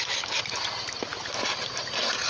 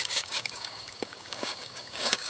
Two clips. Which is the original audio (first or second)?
first